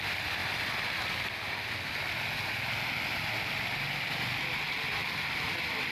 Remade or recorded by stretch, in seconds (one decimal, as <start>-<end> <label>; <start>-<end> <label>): 0.0-5.9 recorded